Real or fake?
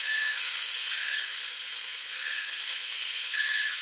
fake